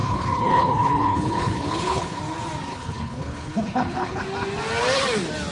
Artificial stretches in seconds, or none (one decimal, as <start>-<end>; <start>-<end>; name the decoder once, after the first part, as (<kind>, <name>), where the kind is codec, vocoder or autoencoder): 0.0-2.2 (codec, HILCodec); 2.7-4.2